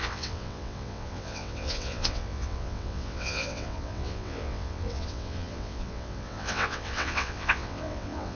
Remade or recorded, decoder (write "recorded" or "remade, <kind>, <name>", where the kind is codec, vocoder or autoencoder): remade, vocoder, WaveNeXt